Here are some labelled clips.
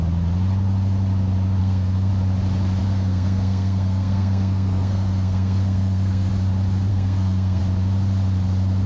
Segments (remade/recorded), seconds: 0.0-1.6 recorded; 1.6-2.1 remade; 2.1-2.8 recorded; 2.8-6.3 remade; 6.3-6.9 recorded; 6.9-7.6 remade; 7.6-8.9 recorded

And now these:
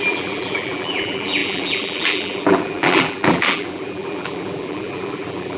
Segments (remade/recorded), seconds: 0.0-5.6 remade

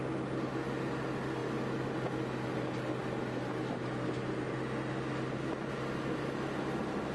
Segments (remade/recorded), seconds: 0.0-7.1 recorded